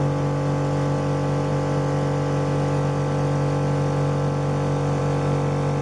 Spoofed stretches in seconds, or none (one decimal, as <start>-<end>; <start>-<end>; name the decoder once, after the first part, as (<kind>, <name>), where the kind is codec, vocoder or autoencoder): none